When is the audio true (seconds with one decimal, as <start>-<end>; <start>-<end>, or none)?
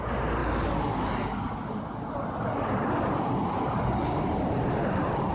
0.0-5.3